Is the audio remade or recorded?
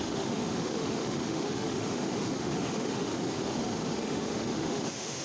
remade